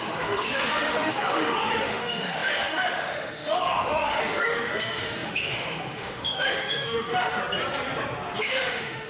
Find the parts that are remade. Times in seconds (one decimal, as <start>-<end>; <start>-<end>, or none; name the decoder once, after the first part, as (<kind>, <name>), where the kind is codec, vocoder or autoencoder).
0.0-7.4 (autoencoder, DAC-VAE); 8.4-9.1